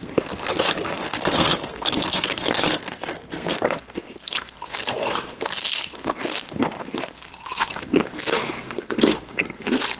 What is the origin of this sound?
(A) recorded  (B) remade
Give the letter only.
B